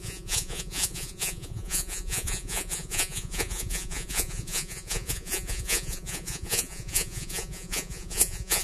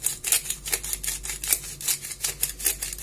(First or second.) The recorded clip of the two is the second